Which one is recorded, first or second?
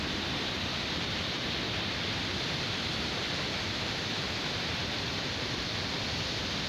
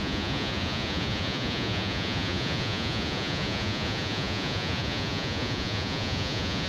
first